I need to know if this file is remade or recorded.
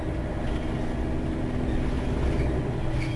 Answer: recorded